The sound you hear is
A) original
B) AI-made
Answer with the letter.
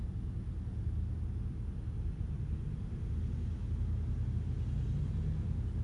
A